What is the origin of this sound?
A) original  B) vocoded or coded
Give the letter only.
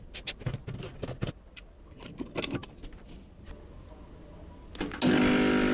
A